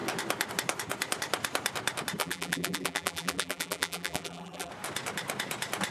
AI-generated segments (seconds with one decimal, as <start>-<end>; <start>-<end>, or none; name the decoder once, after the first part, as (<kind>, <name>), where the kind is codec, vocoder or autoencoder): 2.2-4.7 (vocoder, BigVGAN v2)